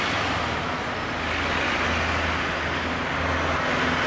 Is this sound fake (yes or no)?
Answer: no